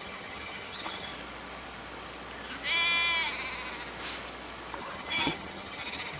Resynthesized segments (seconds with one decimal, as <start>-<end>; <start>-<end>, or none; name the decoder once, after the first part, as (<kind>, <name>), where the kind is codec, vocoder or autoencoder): 0.0-1.1 (vocoder, HiFi-GAN); 4.8-6.2